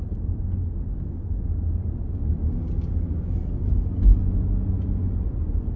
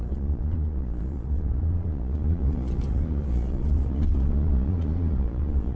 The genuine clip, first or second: first